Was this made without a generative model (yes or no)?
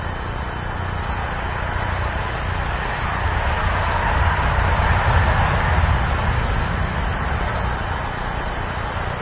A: yes